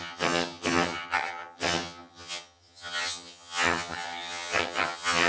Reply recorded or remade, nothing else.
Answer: remade